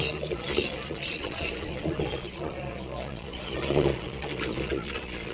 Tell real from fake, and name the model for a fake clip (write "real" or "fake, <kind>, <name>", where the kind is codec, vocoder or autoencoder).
fake, vocoder, Vocos